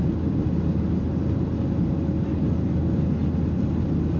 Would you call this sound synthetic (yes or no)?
no